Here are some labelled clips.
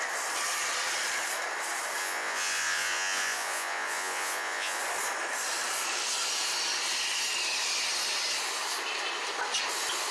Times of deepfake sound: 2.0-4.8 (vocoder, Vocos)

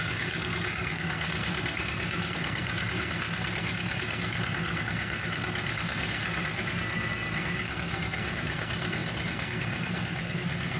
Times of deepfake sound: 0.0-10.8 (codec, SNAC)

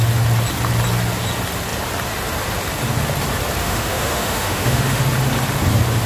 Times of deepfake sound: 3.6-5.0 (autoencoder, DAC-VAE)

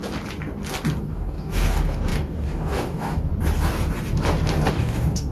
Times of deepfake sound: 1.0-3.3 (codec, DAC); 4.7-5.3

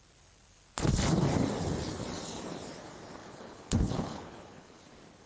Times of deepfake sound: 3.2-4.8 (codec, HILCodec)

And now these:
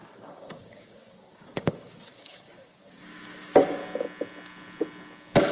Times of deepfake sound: 0.0-3.8 (codec, DAC)

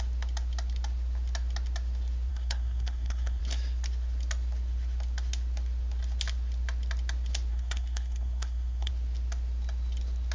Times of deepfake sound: 2.3-3.4 (codec, SNAC); 7.5-8.9

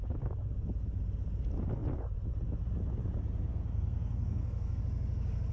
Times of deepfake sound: 3.5-4.8 (codec, SNAC)